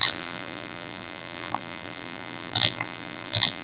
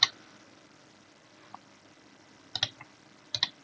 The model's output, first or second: first